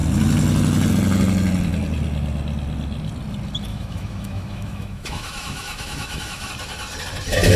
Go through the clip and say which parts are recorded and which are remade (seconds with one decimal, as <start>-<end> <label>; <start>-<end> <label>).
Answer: 0.0-3.7 recorded; 3.7-6.5 remade; 6.5-7.6 recorded